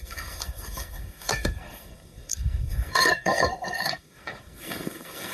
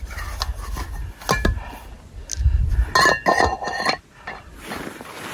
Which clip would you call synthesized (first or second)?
first